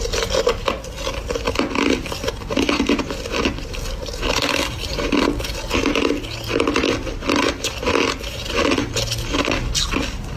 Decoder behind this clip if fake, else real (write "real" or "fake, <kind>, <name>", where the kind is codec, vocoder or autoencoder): real